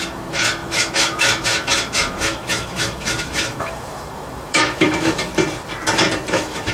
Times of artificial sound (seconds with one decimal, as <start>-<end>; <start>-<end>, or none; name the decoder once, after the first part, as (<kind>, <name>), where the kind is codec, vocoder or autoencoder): 0.0-5.3 (autoencoder, DAC-VAE); 6.3-6.7